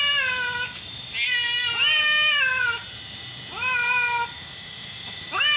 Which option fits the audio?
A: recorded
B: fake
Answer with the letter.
A